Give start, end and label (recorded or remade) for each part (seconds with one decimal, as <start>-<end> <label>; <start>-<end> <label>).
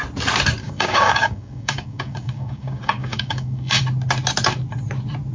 0.0-0.6 recorded; 0.6-3.8 remade; 3.8-5.3 recorded